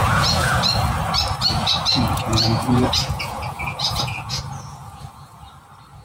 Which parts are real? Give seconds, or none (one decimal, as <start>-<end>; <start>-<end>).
0.6-1.9; 5.5-6.0

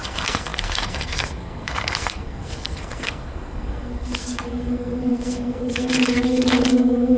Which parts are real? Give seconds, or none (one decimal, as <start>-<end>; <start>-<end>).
none

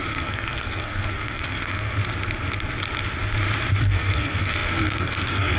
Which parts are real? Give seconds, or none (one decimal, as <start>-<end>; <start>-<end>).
2.0-3.8

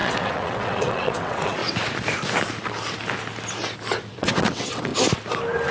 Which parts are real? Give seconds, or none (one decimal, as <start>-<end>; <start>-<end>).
1.6-4.1; 4.9-5.7

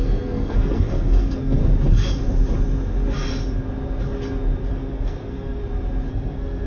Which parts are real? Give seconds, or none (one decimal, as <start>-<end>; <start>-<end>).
1.6-4.7; 5.6-6.1

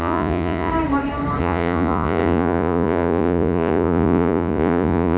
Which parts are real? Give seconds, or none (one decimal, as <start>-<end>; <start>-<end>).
0.7-1.4

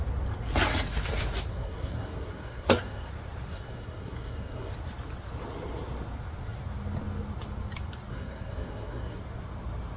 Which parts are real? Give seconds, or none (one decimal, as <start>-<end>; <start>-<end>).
0.0-1.5; 3.1-3.5; 4.7-8.1; 9.2-10.0